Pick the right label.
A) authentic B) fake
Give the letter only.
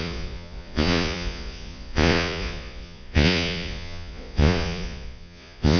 B